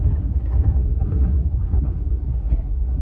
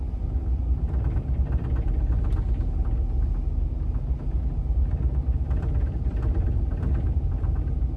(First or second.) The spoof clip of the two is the first